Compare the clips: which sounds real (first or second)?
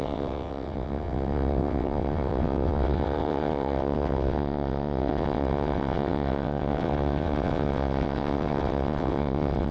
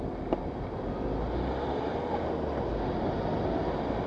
second